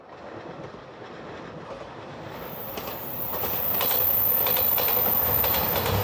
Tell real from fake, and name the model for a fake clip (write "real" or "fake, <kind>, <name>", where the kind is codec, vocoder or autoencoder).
real